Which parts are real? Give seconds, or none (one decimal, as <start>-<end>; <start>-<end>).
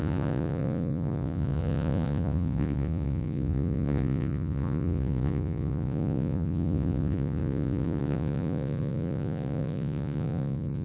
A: none